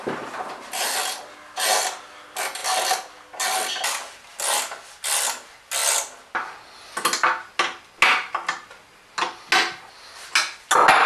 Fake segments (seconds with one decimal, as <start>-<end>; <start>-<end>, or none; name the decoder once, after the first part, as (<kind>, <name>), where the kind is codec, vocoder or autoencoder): none